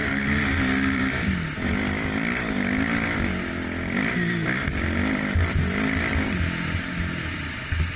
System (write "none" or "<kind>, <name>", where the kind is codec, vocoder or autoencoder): none